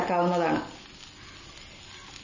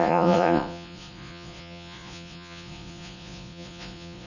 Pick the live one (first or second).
first